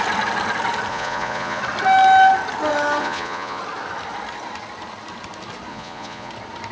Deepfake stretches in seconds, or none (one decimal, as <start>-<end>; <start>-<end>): 0.9-1.6; 3.0-3.6; 5.7-6.3